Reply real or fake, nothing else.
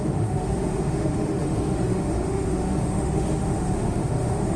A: fake